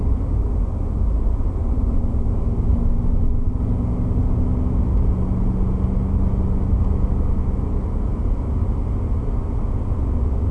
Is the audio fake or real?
real